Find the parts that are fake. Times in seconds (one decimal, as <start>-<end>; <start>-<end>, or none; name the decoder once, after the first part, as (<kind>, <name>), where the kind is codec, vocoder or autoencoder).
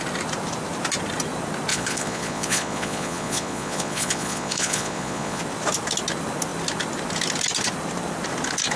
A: 1.7-5.4 (vocoder, Vocos)